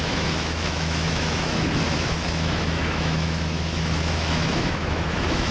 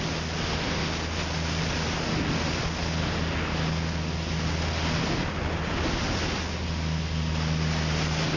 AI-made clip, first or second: first